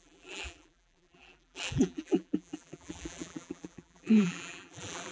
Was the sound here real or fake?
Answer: fake